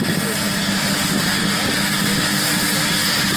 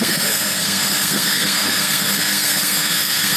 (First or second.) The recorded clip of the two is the first